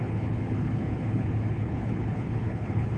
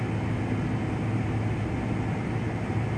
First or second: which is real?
second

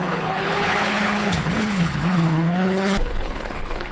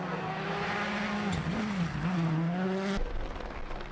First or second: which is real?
second